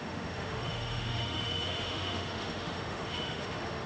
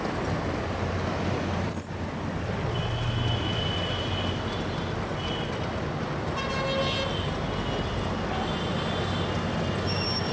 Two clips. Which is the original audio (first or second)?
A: second